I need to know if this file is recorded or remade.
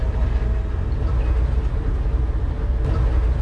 recorded